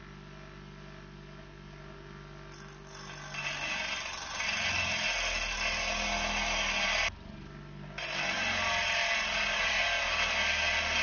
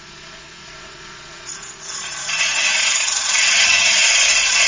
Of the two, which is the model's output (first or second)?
second